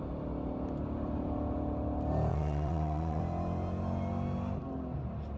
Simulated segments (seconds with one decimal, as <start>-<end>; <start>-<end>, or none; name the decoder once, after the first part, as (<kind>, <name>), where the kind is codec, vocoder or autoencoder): 2.3-3.2 (vocoder, WaveNeXt)